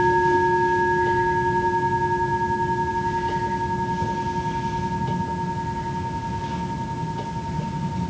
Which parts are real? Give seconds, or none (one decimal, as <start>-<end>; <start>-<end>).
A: 0.0-8.1